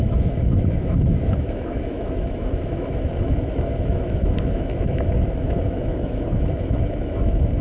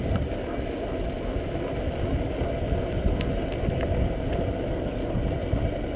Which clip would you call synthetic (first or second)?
first